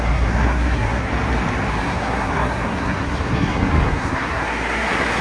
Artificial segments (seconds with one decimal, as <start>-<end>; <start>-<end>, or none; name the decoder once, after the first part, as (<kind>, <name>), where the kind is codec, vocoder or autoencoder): 0.0-1.1 (codec, SNAC); 1.7-5.2